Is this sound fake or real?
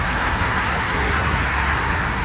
fake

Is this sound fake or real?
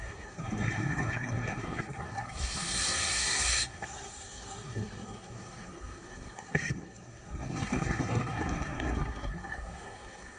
fake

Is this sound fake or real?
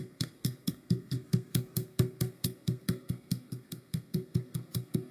fake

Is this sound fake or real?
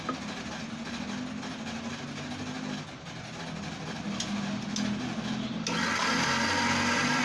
real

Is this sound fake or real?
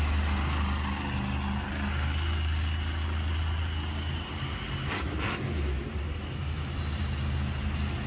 real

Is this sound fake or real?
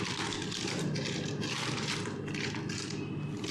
real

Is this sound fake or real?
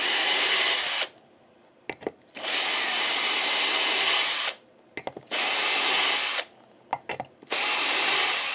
real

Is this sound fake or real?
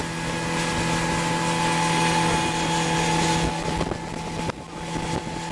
real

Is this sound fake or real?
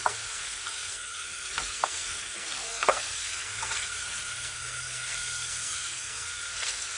fake